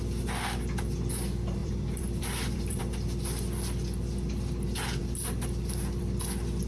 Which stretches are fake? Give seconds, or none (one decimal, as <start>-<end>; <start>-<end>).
1.6-2.8